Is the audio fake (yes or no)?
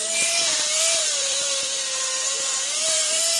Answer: yes